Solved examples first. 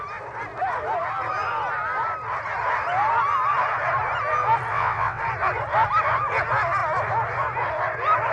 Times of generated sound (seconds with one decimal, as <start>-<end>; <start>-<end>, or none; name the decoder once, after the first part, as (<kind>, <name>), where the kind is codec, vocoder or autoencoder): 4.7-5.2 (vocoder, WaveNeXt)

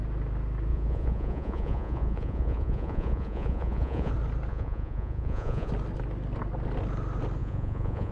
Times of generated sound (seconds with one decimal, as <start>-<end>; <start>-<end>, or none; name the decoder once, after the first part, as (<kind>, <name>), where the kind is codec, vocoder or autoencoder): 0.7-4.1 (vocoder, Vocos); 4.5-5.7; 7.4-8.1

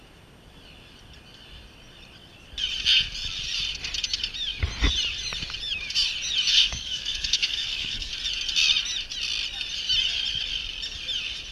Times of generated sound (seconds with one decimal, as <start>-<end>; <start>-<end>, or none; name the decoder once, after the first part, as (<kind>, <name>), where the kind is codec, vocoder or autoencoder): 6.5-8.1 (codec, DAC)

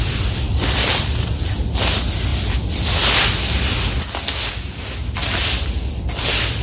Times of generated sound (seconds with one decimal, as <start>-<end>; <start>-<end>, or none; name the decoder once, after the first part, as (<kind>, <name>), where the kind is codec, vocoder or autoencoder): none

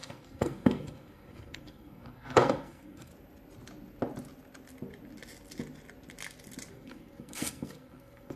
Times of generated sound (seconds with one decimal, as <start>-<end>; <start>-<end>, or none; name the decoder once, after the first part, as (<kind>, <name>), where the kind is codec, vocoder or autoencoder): 0.0-3.1 (codec, SNAC); 6.7-8.4

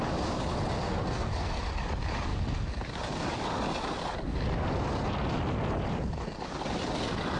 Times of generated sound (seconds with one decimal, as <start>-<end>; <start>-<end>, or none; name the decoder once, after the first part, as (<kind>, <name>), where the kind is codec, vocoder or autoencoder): 0.9-1.6 (codec, SNAC)

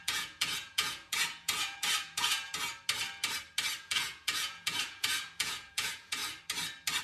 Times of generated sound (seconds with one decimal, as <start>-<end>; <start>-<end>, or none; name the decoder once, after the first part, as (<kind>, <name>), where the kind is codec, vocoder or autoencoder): 0.0-2.5 (vocoder, Vocos); 3.8-6.2

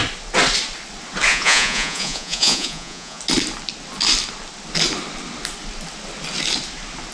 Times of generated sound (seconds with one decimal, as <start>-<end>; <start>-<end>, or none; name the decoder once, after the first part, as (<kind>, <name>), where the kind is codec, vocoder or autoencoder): 1.3-3.2 (vocoder, Vocos)